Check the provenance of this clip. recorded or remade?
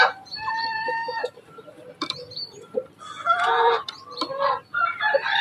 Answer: remade